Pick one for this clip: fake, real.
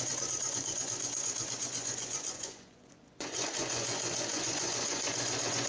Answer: fake